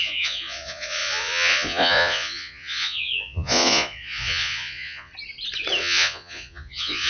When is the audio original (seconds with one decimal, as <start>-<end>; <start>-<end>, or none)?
5.1-5.8